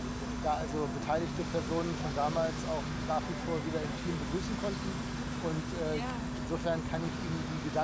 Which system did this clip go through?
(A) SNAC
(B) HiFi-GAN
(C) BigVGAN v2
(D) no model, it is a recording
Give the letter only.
D